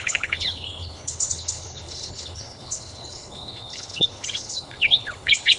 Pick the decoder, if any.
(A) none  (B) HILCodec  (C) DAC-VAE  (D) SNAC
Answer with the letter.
B